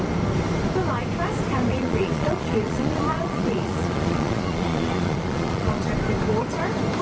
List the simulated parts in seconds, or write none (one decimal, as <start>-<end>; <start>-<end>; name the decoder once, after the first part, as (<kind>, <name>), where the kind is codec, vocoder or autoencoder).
1.7-5.9 (vocoder, Vocos)